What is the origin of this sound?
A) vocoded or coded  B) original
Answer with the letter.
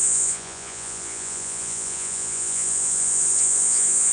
A